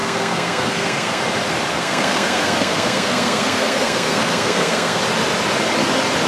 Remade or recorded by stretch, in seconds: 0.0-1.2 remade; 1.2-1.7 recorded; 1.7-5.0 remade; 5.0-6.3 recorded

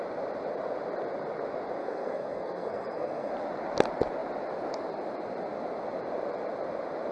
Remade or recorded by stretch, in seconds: 0.0-1.8 recorded; 1.8-3.3 remade; 3.3-7.1 recorded

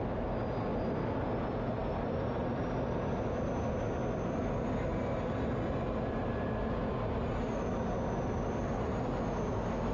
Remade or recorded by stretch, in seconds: 0.0-9.9 recorded

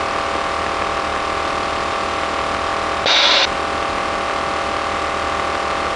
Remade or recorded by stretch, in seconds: 0.0-6.0 recorded

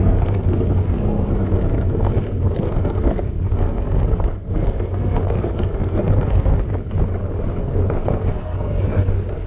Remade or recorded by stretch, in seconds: 0.0-6.7 remade; 6.7-7.6 recorded; 7.6-9.5 remade

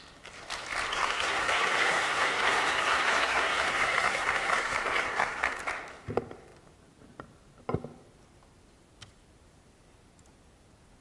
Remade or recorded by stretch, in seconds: 0.0-0.9 recorded; 0.9-5.6 remade; 5.6-11.0 recorded

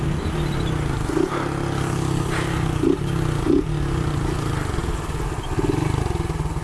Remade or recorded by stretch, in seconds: 0.0-6.6 recorded

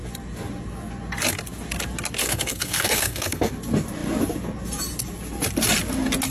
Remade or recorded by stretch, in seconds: 0.0-2.2 recorded; 2.2-3.5 remade; 3.5-6.3 recorded